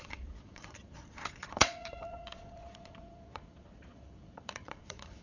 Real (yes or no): no